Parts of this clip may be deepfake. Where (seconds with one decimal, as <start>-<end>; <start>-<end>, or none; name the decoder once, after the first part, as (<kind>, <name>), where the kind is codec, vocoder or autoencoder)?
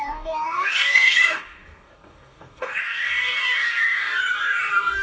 0.0-5.0 (codec, DAC)